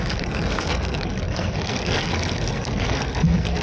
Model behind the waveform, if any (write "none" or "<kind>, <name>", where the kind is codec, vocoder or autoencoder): codec, SNAC